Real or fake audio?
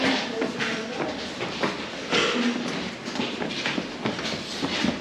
real